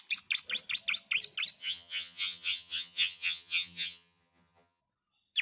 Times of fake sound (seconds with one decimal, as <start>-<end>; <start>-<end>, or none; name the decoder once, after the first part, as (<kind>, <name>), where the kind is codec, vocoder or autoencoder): 1.6-4.8 (vocoder, HiFi-GAN)